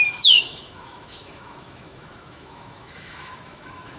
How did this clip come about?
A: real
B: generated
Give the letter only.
B